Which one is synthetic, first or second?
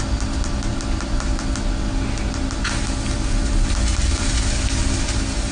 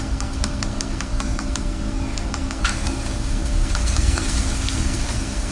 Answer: second